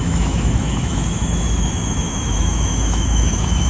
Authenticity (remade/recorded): remade